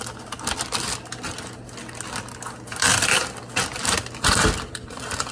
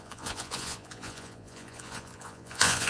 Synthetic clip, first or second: second